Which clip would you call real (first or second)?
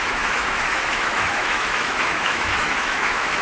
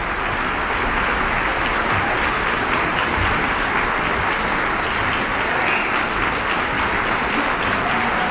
second